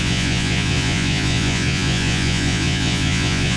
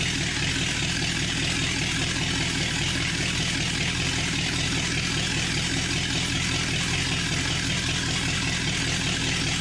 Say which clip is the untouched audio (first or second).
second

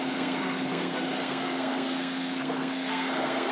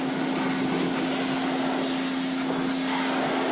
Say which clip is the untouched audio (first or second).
second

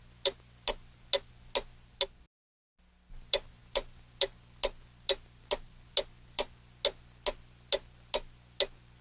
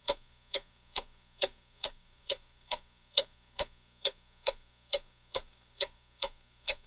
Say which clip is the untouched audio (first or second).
first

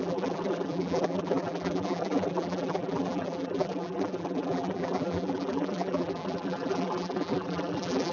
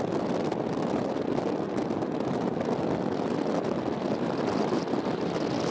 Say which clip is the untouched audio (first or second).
second